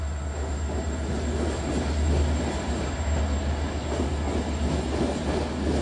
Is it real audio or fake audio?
real